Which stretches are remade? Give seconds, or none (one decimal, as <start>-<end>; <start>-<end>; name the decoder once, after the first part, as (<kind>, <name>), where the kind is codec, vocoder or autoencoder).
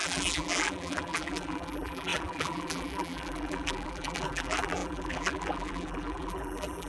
0.0-6.9 (vocoder, BigVGAN v2)